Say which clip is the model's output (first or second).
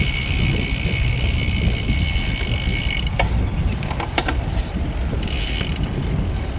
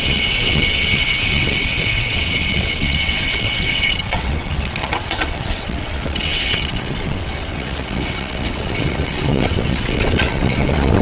second